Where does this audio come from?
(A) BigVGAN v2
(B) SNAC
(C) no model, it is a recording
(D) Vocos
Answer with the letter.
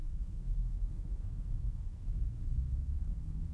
B